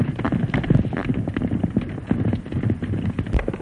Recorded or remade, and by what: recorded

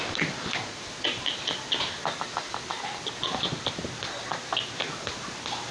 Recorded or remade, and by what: recorded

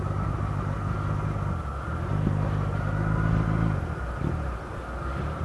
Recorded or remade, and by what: recorded